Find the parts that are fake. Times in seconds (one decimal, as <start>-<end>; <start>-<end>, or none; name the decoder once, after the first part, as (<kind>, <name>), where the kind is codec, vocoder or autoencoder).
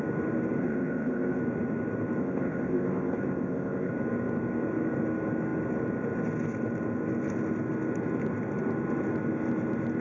0.6-1.4 (codec, ZipCodec); 2.2-3.9